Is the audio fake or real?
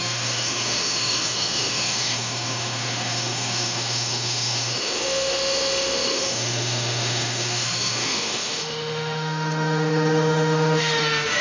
fake